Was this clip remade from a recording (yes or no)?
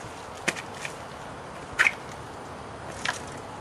no